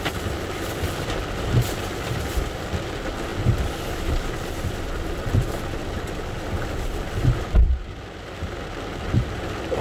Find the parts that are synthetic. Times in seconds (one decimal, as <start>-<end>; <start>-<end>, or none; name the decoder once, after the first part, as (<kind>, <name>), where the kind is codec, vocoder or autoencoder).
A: none